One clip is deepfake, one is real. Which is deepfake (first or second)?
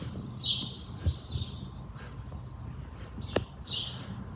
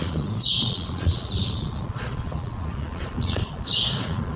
second